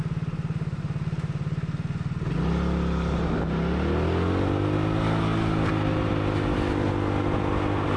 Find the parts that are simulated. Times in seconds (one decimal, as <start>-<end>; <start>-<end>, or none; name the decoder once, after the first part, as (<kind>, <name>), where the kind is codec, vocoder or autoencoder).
none